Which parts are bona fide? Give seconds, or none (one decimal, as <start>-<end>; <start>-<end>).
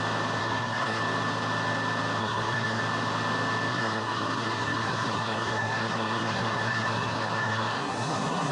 0.0-0.4; 1.0-2.2; 2.8-3.7